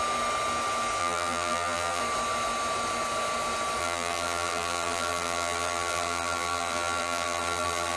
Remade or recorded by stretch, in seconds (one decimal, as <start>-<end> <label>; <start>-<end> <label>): 0.0-1.0 recorded; 1.0-2.0 remade; 2.0-3.8 recorded; 3.8-8.0 remade